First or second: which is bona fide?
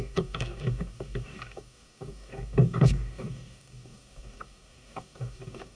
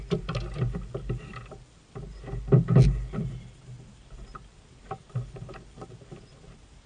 second